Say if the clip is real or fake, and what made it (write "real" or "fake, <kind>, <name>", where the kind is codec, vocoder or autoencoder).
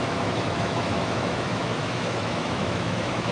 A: fake, autoencoder, DAC-VAE